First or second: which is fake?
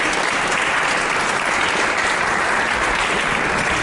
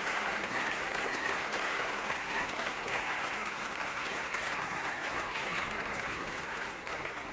second